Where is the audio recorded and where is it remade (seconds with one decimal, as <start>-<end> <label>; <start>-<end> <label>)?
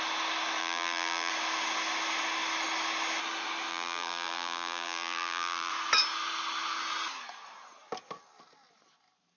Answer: 0.0-0.6 recorded; 0.6-1.3 remade; 1.3-3.7 recorded; 3.7-5.7 remade; 5.7-9.4 recorded